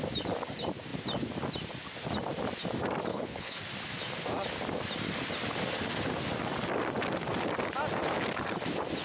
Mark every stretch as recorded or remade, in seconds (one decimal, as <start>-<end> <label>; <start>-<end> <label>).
0.0-3.1 recorded; 3.1-3.6 remade; 3.6-9.0 recorded